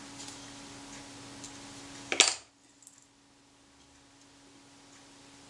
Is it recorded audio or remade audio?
recorded